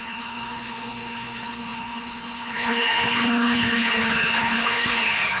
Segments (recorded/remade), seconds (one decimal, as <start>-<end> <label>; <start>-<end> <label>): 0.0-5.4 remade